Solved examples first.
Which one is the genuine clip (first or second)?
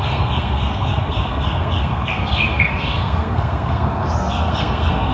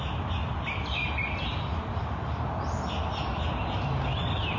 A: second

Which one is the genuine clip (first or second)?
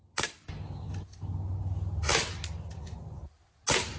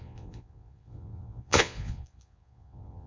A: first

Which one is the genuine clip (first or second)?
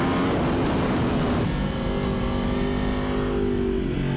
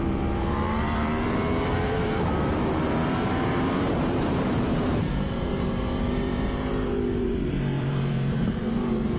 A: first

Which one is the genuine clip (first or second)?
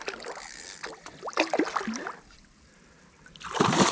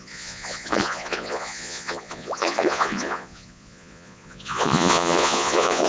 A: first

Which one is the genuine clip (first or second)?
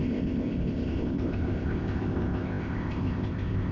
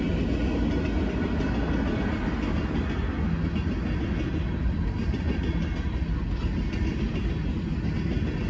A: second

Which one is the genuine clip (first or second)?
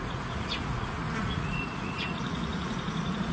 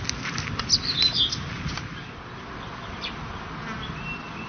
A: second